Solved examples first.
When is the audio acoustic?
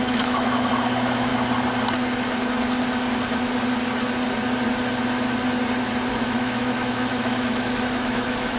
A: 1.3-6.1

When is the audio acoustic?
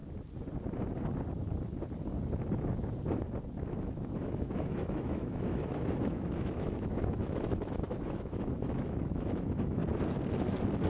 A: 0.0-3.8; 9.8-10.9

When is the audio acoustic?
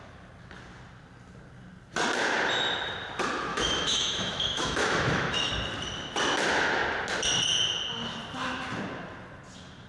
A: 0.0-3.5; 5.5-9.9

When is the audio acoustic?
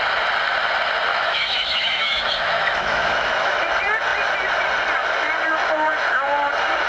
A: 0.0-1.1; 3.6-6.9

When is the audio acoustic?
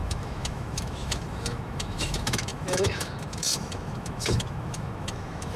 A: none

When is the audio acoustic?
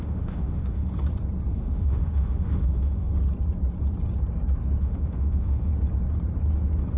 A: 0.8-1.5; 3.1-4.8; 5.7-7.0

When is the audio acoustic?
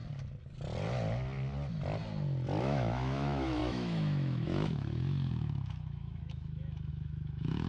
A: 0.0-2.6